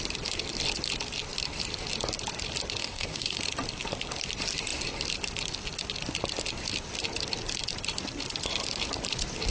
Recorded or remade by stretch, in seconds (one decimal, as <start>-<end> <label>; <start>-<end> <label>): 0.0-2.8 recorded; 2.8-3.4 remade; 3.4-9.5 recorded